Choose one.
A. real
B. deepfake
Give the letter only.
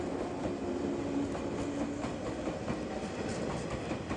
A